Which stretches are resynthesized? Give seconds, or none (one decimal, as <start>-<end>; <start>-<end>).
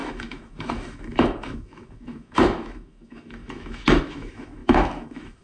0.0-5.4